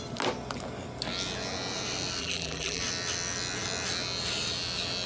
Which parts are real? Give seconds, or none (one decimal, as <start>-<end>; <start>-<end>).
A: 0.0-2.2; 2.8-5.1